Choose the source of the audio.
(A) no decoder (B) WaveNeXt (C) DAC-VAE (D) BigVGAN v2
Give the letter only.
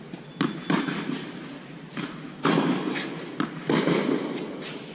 A